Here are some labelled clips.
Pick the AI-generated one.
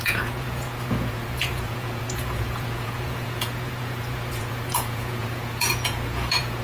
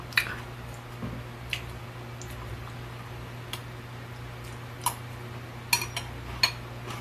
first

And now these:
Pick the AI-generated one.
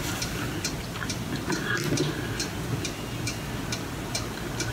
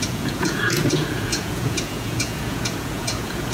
second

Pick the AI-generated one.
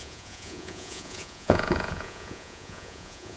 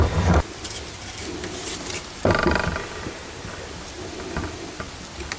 first